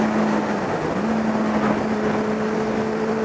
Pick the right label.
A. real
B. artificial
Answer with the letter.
A